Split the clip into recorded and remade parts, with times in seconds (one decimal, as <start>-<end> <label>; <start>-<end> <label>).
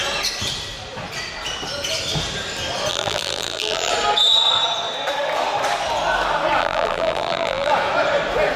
0.0-2.9 recorded; 2.9-3.9 remade; 3.9-6.6 recorded; 6.6-7.7 remade; 7.7-8.6 recorded